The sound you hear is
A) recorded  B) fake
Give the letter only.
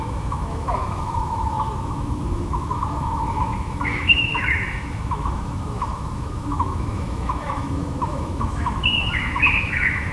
B